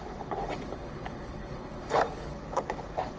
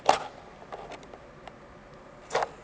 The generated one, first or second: first